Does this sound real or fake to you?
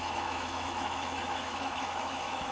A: fake